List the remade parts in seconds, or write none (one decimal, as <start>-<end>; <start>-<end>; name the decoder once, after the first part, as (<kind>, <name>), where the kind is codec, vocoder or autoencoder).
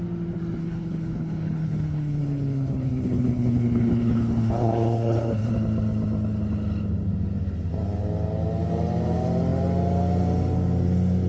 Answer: 0.6-5.5 (codec, HILCodec)